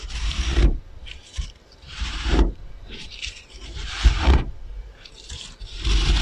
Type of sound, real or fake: fake